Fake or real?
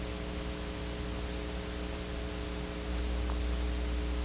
real